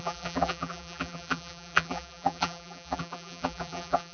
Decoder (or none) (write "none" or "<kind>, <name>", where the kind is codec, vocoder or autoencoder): vocoder, BigVGAN v2